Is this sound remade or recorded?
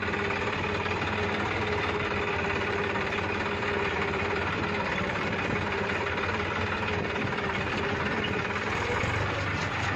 remade